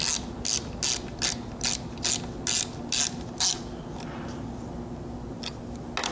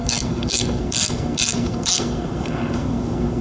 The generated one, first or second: second